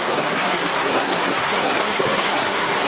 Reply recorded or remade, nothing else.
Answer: remade